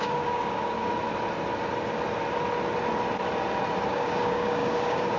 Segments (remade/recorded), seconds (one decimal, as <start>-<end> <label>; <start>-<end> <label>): 0.0-0.9 remade; 0.9-3.9 recorded; 3.9-5.2 remade